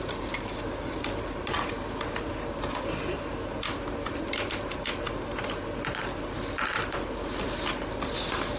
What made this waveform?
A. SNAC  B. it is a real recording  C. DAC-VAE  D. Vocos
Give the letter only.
B